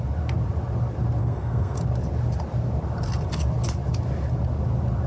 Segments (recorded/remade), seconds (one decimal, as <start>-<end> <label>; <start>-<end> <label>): 0.0-1.2 recorded; 1.2-1.8 remade; 1.8-5.1 recorded